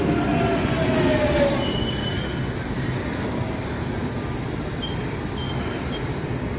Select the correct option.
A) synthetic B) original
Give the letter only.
B